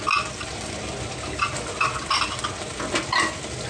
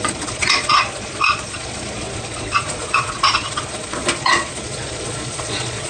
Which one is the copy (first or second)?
second